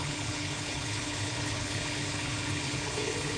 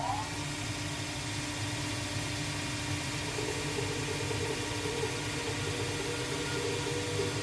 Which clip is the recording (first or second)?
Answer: second